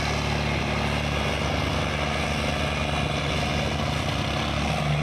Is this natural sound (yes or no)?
yes